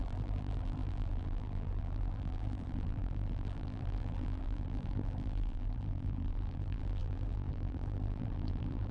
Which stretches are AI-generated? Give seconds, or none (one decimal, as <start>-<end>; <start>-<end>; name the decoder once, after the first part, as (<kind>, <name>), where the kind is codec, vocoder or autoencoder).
0.0-8.9 (vocoder, BigVGAN v2)